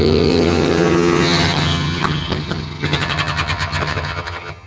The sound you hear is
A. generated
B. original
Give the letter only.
A